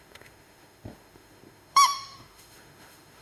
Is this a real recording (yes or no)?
no